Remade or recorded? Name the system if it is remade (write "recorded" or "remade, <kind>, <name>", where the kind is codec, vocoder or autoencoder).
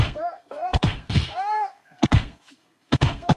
remade, codec, SNAC